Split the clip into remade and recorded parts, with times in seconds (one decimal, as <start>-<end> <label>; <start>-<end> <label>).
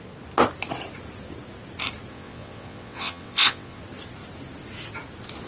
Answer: 0.0-2.1 recorded; 2.1-3.8 remade; 3.8-5.5 recorded